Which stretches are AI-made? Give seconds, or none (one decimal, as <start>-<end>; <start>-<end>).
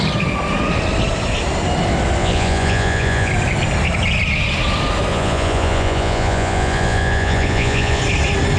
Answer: 2.2-3.3; 5.1-8.0